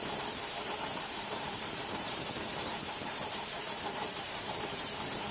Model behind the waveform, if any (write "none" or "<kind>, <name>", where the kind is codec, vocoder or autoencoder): vocoder, BigVGAN v2